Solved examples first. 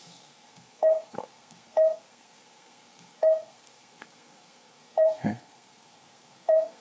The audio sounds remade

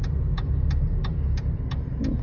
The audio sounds recorded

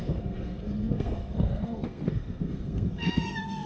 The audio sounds remade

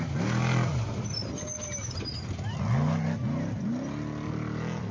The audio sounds recorded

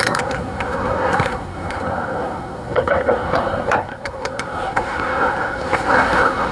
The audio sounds remade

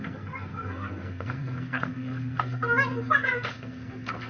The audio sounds remade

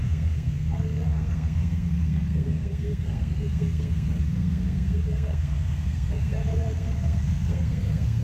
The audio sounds remade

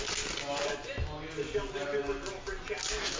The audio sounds recorded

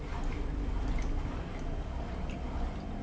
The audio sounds recorded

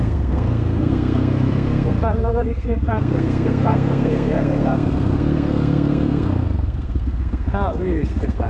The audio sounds remade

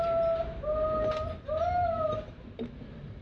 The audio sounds recorded